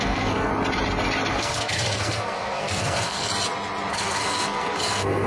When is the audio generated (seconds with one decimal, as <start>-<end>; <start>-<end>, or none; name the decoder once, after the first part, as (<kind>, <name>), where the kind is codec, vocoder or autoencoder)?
0.0-0.5 (codec, SNAC); 1.3-3.3; 3.9-5.3